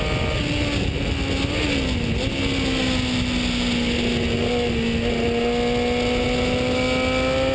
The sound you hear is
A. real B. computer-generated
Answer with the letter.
A